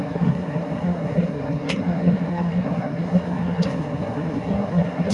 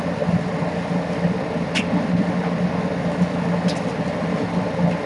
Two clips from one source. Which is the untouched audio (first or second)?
second